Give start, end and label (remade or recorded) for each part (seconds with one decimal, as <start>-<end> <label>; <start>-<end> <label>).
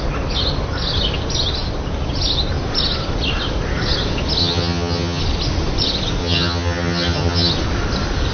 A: 0.0-4.4 recorded; 4.4-5.2 remade; 5.2-6.2 recorded; 6.2-7.5 remade; 7.5-8.3 recorded